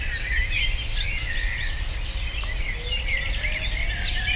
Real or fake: real